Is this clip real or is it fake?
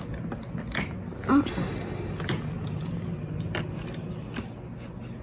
real